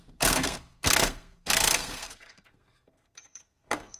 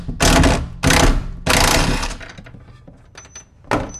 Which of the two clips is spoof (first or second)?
first